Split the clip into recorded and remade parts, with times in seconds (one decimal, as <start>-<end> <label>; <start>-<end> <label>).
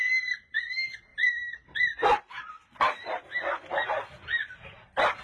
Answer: 0.0-0.6 remade; 0.6-1.1 recorded; 1.1-3.7 remade; 3.7-5.2 recorded